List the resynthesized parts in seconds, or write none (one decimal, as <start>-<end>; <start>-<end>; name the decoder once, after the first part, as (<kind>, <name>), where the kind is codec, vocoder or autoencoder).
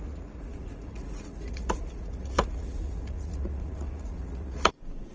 0.0-5.1 (vocoder, Vocos)